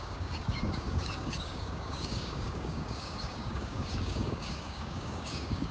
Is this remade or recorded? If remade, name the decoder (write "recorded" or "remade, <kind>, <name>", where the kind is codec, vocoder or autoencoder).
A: remade, codec, DAC